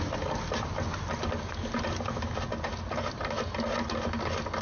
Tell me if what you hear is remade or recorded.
recorded